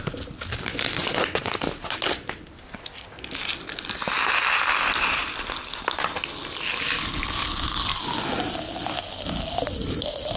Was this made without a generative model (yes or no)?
yes